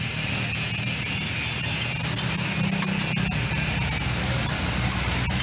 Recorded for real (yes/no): yes